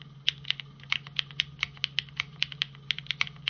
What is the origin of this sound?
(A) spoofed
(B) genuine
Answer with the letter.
B